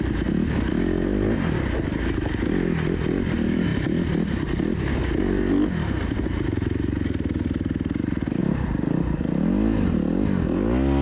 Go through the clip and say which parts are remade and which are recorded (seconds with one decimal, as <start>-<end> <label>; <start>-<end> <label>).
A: 0.0-3.7 recorded; 3.7-5.2 remade; 5.2-8.4 recorded; 8.4-9.2 remade; 9.2-11.0 recorded

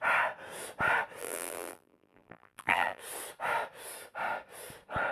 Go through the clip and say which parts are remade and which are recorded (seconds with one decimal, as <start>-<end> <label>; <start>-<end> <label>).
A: 0.0-1.2 recorded; 1.2-3.0 remade; 3.0-5.1 recorded

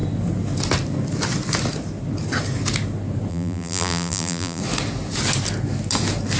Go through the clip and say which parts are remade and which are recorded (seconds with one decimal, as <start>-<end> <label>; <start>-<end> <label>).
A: 0.0-3.3 recorded; 3.3-4.6 remade; 4.6-6.4 recorded

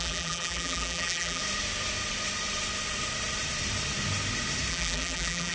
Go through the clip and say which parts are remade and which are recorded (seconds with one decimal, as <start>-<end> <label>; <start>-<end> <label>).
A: 0.0-1.4 remade; 1.4-4.7 recorded; 4.7-5.5 remade